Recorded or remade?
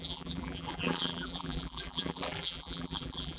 remade